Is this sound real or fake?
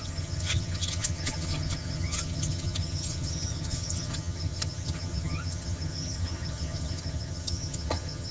fake